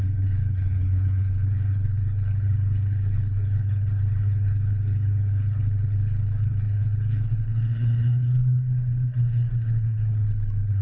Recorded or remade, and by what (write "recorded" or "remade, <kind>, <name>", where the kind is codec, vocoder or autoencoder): remade, codec, HILCodec